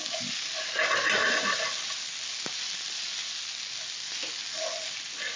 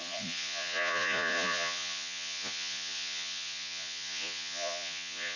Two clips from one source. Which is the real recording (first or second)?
first